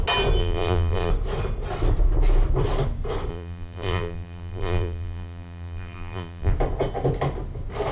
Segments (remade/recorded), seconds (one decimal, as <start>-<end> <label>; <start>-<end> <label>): 0.0-0.4 recorded; 0.4-1.1 remade; 1.1-3.3 recorded; 3.3-6.5 remade; 6.5-7.9 recorded